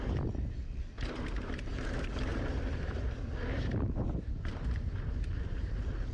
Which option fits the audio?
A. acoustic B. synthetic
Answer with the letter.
B